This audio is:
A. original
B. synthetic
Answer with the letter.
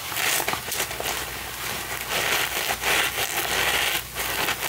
A